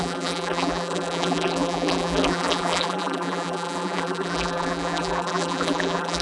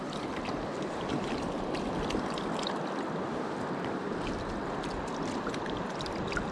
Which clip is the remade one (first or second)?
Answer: first